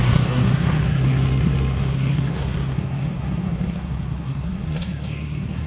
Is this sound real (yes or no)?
no